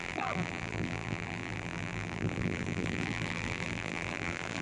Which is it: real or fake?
fake